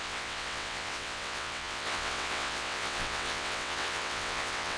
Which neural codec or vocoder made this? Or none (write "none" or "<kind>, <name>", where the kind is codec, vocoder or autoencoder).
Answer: vocoder, WaveNeXt